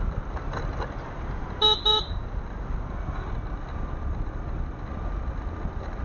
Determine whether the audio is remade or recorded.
recorded